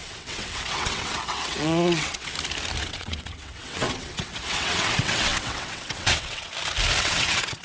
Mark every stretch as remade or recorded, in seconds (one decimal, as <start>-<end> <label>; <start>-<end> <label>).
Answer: 0.0-2.3 remade; 2.3-2.8 recorded; 2.8-6.5 remade; 6.5-7.0 recorded; 7.0-7.6 remade